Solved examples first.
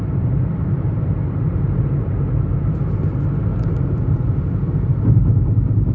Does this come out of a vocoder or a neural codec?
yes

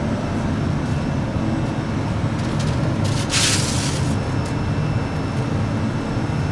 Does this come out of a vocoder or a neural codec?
no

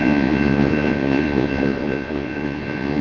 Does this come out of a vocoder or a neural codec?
yes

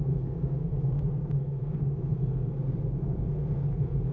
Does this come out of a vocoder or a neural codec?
yes